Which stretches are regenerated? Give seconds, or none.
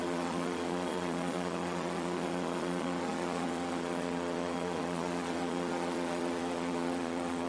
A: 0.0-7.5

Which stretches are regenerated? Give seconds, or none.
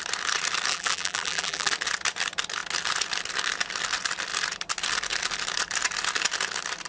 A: 0.7-1.7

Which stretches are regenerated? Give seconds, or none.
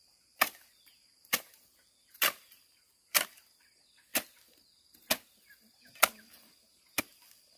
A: 0.0-4.1; 7.0-7.6